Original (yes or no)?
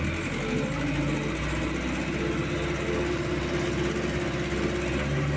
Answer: yes